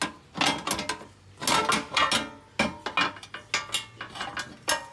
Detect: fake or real real